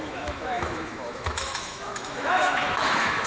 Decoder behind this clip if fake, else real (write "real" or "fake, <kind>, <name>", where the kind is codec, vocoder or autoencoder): fake, autoencoder, DAC-VAE